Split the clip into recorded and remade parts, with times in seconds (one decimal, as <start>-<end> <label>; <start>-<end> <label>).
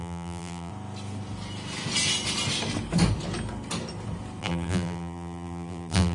0.0-0.7 remade; 0.7-4.4 recorded; 4.4-6.1 remade